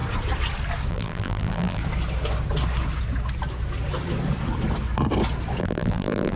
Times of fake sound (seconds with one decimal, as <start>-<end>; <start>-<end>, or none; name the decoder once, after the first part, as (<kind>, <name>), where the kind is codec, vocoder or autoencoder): 0.9-1.8 (vocoder, BigVGAN v2); 5.6-6.4